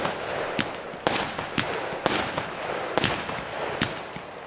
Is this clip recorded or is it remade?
recorded